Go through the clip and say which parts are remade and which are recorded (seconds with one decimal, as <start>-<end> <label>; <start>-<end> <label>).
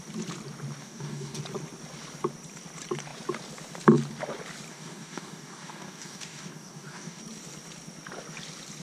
0.0-0.8 recorded; 0.8-1.4 remade; 1.4-4.7 recorded; 4.7-7.2 remade; 7.2-8.8 recorded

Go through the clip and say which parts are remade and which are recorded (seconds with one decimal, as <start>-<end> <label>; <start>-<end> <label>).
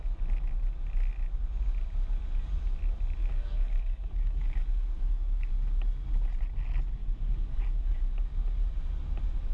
0.0-3.2 recorded; 3.2-5.5 remade; 5.5-7.0 recorded; 7.0-8.1 remade; 8.1-9.5 recorded